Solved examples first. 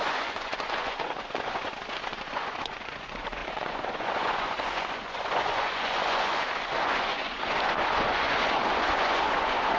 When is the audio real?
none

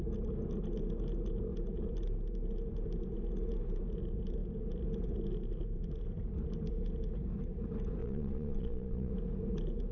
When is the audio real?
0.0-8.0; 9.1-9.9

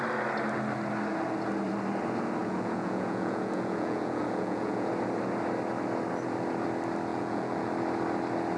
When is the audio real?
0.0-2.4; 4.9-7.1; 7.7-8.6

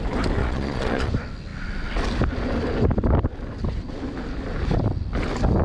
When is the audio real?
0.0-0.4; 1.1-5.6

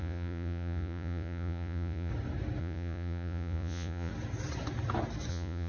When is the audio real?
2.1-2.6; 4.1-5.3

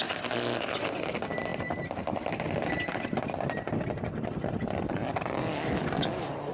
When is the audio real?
0.0-6.5

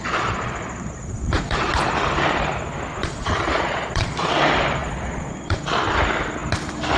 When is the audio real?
1.7-2.9; 4.3-4.8; 5.6-7.0